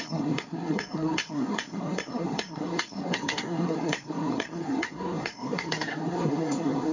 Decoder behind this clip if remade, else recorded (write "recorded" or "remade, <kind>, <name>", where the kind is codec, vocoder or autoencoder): remade, codec, SNAC